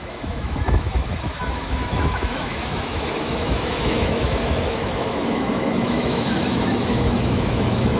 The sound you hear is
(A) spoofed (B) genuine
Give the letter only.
A